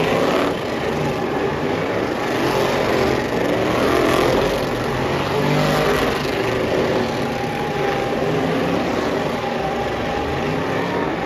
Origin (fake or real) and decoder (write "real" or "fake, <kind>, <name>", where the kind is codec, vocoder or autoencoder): real